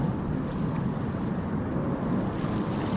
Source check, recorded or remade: recorded